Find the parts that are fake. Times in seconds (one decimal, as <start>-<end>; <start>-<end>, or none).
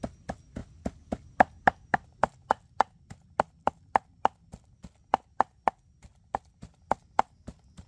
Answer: 6.1-6.8